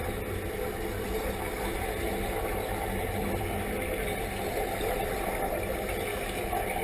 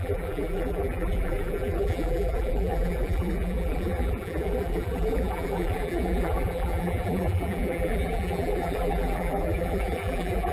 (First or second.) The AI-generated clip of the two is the second